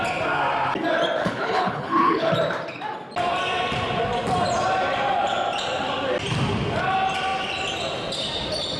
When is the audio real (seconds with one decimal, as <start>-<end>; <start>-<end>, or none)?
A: 0.0-1.2; 2.3-8.8